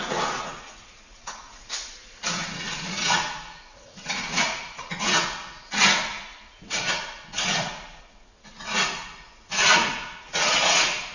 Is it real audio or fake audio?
fake